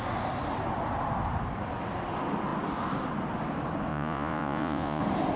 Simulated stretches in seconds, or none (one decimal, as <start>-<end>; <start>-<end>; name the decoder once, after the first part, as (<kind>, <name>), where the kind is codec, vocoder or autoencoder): 3.9-5.0 (vocoder, Vocos)